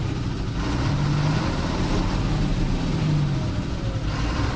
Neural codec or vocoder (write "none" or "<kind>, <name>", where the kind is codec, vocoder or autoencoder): none